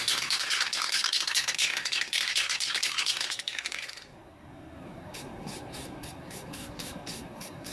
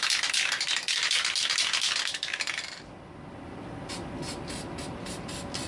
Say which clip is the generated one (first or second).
first